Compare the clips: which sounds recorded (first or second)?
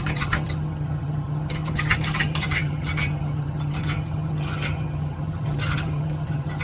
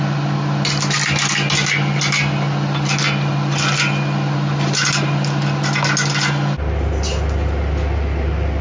second